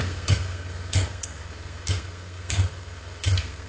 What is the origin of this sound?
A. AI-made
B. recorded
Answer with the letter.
A